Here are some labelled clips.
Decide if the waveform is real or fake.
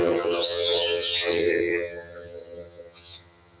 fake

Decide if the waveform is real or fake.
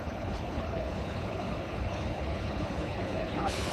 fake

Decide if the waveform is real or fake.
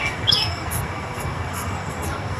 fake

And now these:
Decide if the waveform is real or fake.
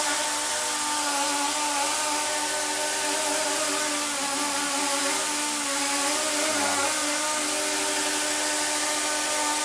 real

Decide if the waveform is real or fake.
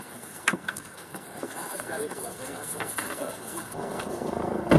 fake